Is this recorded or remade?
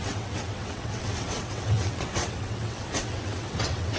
remade